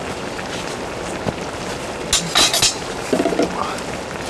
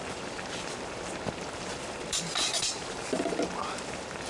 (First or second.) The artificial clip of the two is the second